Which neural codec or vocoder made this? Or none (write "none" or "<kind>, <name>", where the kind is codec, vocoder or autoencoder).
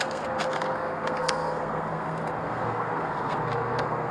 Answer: codec, SNAC